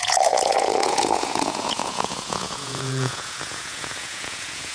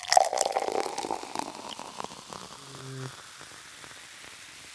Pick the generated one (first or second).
first